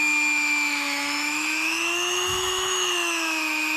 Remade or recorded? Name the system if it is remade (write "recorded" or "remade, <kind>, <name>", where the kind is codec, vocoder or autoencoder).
remade, autoencoder, DAC-VAE